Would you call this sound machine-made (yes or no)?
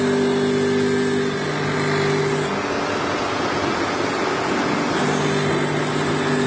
no